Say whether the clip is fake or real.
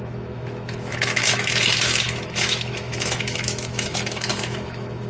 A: fake